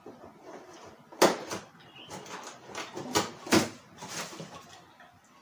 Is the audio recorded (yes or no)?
yes